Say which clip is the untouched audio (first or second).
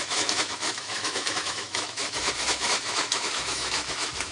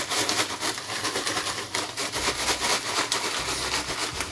second